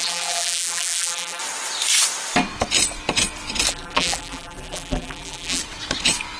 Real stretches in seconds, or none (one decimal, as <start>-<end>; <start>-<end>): 1.4-3.7; 5.6-6.4